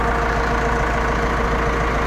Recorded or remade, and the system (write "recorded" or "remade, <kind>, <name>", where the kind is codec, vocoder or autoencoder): recorded